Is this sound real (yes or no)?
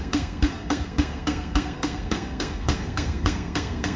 no